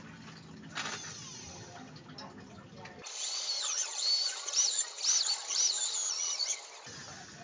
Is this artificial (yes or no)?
no